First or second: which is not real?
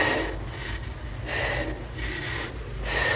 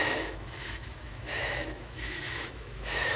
second